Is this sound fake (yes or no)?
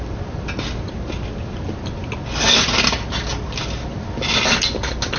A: no